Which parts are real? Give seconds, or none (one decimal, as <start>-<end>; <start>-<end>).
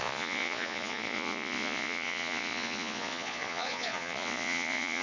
none